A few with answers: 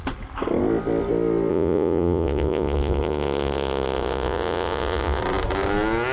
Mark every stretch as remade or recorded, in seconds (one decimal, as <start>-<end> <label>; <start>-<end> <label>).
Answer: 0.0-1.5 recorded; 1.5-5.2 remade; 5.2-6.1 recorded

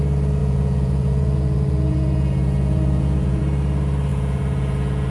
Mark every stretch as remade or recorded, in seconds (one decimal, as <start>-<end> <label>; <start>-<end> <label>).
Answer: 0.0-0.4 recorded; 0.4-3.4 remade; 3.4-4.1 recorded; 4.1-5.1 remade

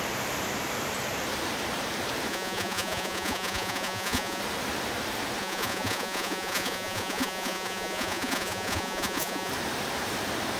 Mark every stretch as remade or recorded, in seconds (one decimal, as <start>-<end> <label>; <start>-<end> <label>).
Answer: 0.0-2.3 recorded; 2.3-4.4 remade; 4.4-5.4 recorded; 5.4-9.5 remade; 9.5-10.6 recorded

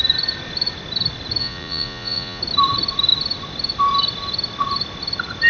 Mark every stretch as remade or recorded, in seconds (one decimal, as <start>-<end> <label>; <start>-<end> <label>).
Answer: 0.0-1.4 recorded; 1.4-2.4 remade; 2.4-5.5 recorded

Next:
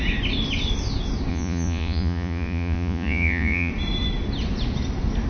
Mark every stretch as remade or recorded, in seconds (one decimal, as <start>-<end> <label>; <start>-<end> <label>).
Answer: 0.0-1.3 recorded; 1.3-3.7 remade; 3.7-5.3 recorded